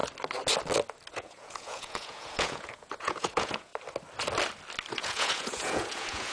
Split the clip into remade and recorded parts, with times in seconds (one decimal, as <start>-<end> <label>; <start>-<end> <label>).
0.0-1.1 recorded; 1.1-3.7 remade; 3.7-4.9 recorded; 4.9-6.3 remade